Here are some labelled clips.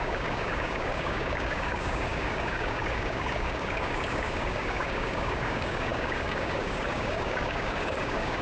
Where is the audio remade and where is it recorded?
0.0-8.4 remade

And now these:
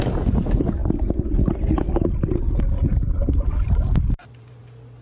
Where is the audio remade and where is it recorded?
0.0-3.2 recorded; 3.2-4.6 remade; 4.6-5.0 recorded